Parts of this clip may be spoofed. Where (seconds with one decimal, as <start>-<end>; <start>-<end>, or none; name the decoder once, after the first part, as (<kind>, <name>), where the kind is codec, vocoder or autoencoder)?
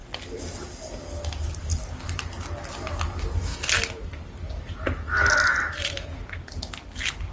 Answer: none